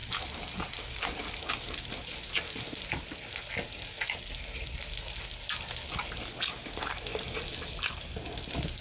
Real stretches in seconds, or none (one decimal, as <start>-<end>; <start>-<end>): 2.9-8.8